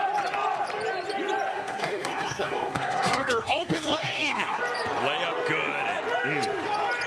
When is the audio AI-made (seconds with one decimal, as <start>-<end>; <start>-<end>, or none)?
1.5-4.6

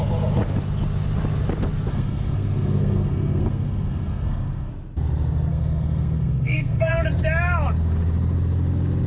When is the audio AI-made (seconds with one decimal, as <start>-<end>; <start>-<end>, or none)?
1.9-4.7; 5.5-6.9